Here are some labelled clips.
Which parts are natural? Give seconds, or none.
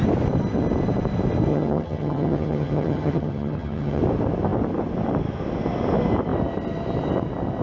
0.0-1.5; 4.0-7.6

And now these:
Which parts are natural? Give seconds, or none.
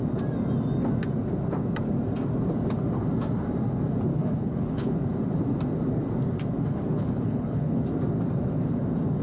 0.0-4.1; 4.9-6.7; 7.8-9.2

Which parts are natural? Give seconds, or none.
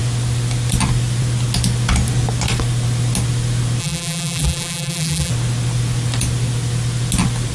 0.0-3.8; 5.3-7.5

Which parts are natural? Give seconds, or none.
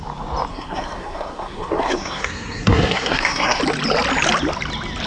0.0-0.5; 3.6-5.1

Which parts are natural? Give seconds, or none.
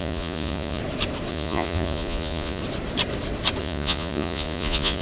0.8-1.3; 2.6-3.6